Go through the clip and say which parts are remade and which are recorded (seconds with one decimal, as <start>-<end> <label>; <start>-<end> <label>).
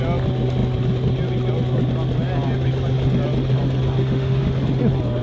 0.0-4.0 recorded; 4.0-4.5 remade; 4.5-5.2 recorded